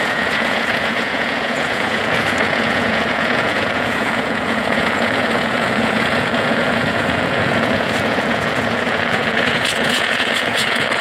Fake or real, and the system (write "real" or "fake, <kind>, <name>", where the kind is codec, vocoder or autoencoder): fake, vocoder, Vocos